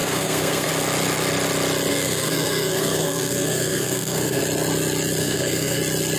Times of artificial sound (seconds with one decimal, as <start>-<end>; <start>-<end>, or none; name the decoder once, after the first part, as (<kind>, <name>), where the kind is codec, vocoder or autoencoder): 0.0-0.7 (codec, SNAC); 1.9-4.4; 5.2-5.8